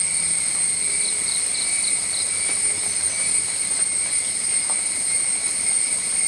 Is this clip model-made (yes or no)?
no